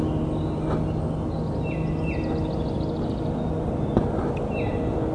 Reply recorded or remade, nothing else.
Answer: recorded